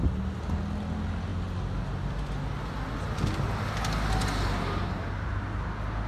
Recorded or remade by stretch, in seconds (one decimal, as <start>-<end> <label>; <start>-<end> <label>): 0.0-6.1 recorded